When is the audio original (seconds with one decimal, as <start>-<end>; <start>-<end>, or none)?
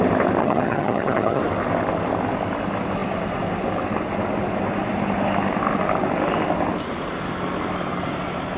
0.0-0.4; 1.4-8.6